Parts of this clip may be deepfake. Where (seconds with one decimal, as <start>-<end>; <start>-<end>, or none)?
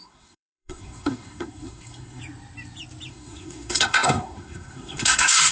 0.0-2.2; 3.1-5.5